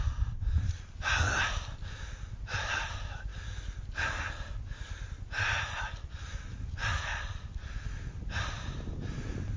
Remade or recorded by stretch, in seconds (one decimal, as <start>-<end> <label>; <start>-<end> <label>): 0.0-9.6 recorded